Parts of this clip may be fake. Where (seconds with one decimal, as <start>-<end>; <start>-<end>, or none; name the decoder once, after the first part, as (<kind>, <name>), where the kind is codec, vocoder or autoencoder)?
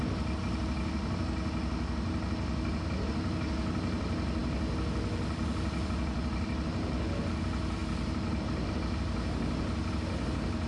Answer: none